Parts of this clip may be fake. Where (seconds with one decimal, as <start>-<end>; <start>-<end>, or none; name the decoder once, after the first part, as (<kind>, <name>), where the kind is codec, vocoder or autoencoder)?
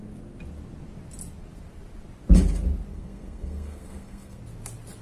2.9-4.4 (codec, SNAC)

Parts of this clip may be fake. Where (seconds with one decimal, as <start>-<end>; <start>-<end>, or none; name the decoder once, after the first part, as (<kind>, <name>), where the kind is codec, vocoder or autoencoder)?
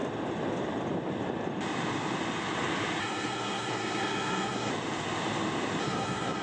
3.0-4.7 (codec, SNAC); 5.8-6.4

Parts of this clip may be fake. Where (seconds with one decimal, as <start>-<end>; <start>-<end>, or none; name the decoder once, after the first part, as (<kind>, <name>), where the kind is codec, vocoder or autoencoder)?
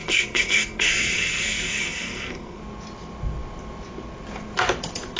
0.0-2.6 (codec, SNAC)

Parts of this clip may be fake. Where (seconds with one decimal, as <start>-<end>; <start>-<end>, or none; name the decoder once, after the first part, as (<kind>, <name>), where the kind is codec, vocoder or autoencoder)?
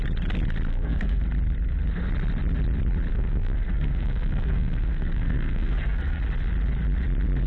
0.7-1.2 (codec, SNAC); 3.1-6.2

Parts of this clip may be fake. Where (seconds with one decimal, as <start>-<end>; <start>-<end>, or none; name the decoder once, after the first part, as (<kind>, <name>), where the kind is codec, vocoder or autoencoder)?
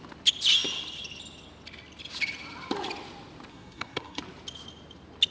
3.5-4.2 (codec, SNAC)